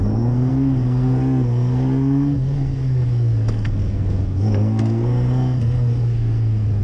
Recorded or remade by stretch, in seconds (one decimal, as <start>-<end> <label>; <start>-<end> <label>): 0.0-6.8 remade